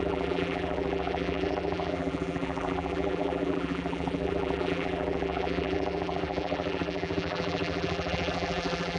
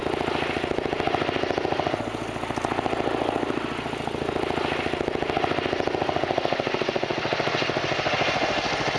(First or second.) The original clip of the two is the second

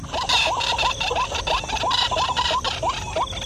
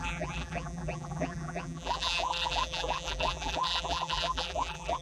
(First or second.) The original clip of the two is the first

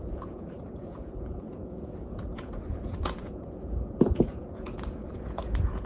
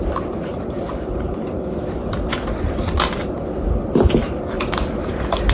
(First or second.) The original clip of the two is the second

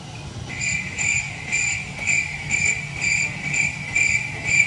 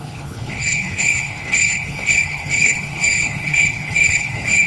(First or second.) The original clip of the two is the first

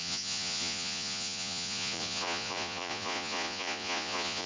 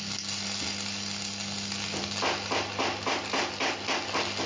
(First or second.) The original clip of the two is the second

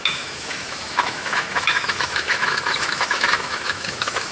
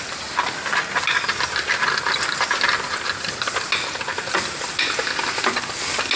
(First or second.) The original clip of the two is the second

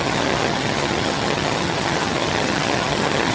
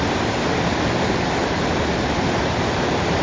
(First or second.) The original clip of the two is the second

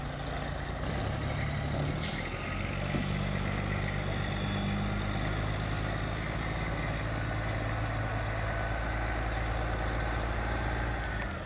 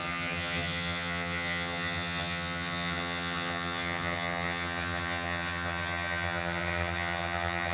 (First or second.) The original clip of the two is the first